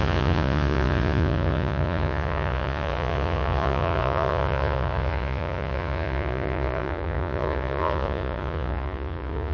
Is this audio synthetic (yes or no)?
yes